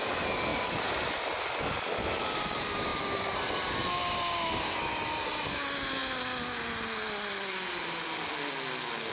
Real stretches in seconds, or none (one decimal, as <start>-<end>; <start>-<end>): 0.0-0.5; 1.6-2.9; 3.5-6.0